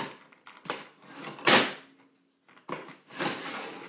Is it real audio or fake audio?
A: real